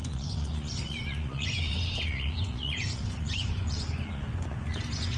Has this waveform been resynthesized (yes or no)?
yes